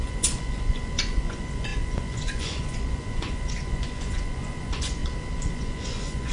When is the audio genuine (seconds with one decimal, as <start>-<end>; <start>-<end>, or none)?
5.0-5.5